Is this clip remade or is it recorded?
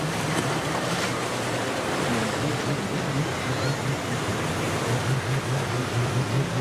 recorded